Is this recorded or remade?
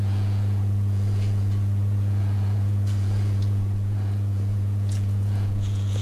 remade